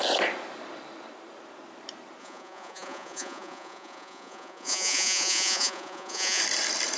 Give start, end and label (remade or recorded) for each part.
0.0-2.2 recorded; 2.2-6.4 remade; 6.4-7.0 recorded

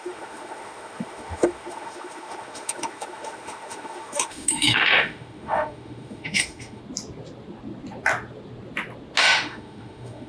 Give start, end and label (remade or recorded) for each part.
0.0-6.8 remade; 6.8-9.2 recorded; 9.2-10.3 remade